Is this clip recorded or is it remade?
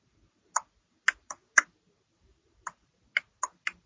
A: recorded